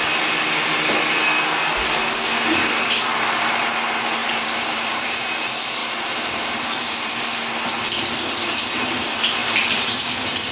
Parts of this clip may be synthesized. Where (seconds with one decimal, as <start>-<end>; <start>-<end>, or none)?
4.2-5.3; 5.8-7.1